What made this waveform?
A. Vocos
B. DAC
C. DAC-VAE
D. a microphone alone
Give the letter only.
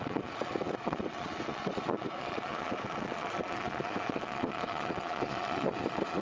A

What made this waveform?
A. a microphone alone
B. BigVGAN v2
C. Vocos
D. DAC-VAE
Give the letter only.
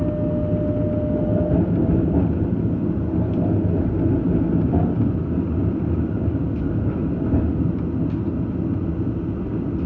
A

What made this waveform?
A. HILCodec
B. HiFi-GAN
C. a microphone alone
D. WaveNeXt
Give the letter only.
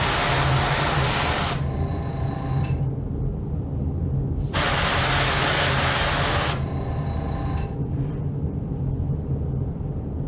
C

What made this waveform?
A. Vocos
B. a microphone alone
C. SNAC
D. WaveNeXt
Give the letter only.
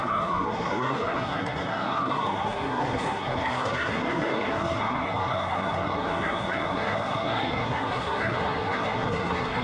C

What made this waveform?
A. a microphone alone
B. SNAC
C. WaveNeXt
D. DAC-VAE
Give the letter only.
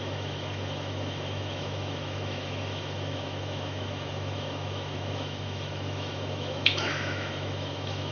D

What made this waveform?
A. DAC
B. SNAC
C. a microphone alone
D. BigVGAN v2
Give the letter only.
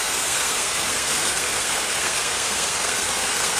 B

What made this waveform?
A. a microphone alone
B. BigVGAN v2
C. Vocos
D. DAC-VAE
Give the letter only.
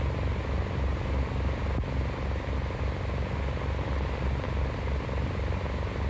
A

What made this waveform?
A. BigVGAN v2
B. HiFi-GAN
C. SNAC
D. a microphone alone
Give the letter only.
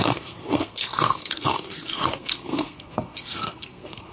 C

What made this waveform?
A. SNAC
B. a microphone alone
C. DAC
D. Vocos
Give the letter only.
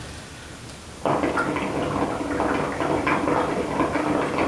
B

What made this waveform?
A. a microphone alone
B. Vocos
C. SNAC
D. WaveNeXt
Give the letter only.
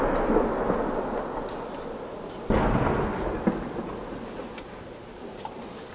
A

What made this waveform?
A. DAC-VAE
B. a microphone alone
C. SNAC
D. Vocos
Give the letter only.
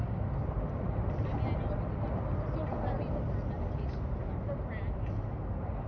B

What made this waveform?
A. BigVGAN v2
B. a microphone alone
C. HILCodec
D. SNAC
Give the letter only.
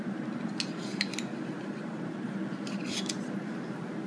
B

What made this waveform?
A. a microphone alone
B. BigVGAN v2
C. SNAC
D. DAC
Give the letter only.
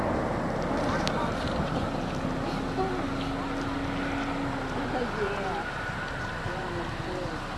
A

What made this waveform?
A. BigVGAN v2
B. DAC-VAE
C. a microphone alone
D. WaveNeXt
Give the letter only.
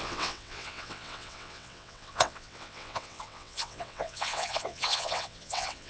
D